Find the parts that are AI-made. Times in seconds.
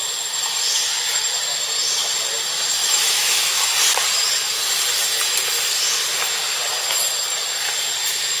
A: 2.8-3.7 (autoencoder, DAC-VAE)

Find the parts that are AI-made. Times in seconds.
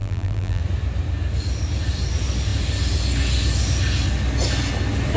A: 0.0-0.6 (vocoder, BigVGAN v2)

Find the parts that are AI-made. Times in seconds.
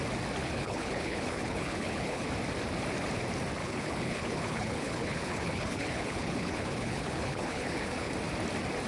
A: 0.4-2.3 (codec, HILCodec); 3.6-8.1